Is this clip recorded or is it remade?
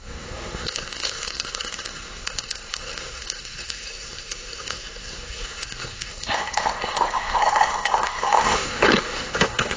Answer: remade